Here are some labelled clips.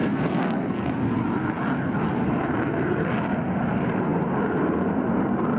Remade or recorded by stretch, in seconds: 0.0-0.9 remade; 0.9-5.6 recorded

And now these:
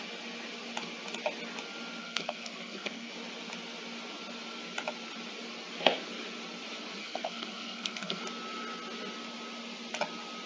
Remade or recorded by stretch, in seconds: 0.0-2.0 recorded; 2.0-3.1 remade; 3.1-7.0 recorded; 7.0-8.2 remade; 8.2-10.5 recorded